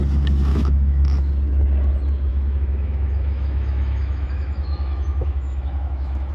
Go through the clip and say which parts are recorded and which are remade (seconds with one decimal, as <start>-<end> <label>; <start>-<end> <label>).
0.0-0.5 recorded; 0.5-1.3 remade; 1.3-2.3 recorded; 2.3-6.3 remade